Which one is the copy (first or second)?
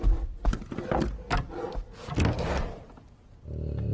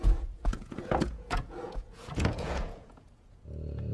second